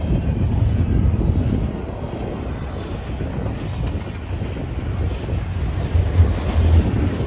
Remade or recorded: recorded